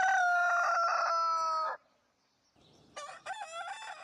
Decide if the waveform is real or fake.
real